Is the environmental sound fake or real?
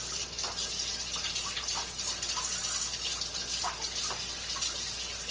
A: real